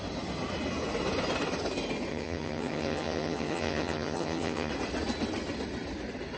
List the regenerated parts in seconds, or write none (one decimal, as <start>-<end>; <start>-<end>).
2.1-4.7